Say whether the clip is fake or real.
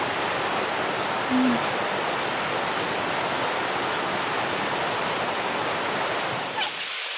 real